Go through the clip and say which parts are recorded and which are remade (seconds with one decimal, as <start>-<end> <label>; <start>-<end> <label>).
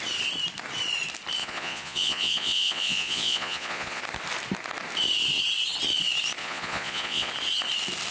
0.0-1.4 recorded; 1.4-4.0 remade; 4.0-6.4 recorded; 6.4-7.3 remade; 7.3-8.1 recorded